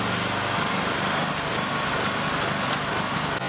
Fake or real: real